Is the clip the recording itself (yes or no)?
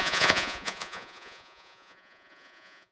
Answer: no